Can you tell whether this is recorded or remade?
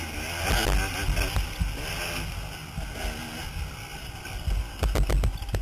recorded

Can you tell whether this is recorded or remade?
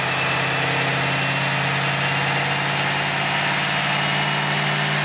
recorded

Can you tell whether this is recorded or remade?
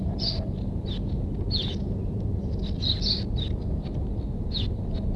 recorded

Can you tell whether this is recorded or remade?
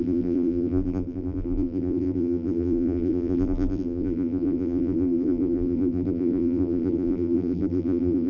remade